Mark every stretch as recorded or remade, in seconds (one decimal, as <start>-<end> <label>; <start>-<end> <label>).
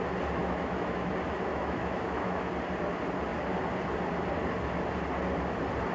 0.0-0.4 recorded; 0.4-1.1 remade; 1.1-1.5 recorded; 1.5-2.5 remade; 2.5-5.9 recorded